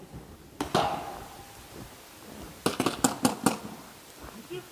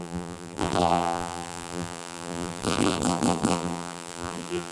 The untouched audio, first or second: first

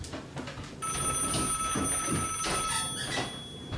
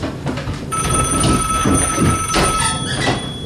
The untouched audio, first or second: first